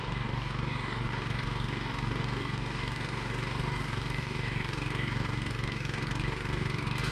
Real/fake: fake